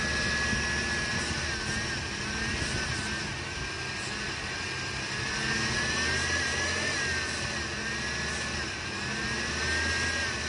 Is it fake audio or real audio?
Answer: real